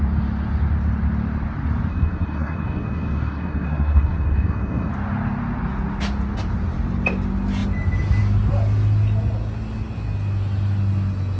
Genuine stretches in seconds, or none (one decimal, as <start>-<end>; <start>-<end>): 0.0-1.9; 4.9-11.4